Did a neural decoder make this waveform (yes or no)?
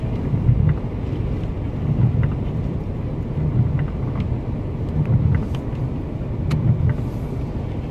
no